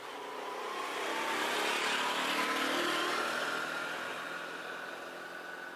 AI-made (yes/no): no